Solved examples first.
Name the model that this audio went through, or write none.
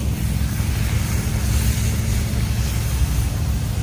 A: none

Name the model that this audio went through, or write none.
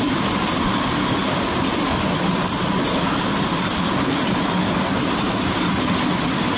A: none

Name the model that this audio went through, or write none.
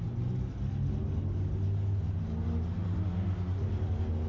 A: none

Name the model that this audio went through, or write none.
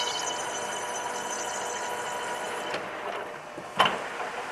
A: none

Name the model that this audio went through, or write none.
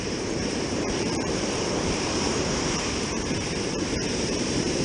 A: vocoder, BigVGAN v2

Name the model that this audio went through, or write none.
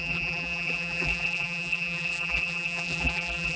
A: vocoder, BigVGAN v2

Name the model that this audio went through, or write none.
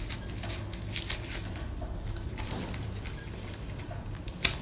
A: vocoder, BigVGAN v2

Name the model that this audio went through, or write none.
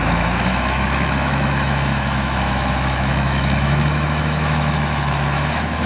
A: autoencoder, DAC-VAE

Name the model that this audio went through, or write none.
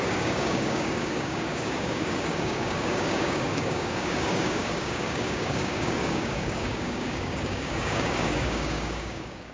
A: codec, DAC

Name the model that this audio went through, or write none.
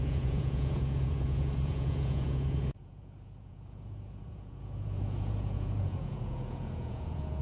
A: vocoder, Vocos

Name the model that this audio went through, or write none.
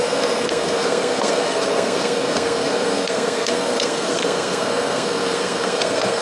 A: codec, SNAC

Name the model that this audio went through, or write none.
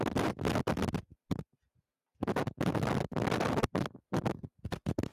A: none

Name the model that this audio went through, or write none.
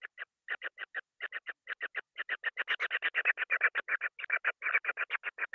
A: none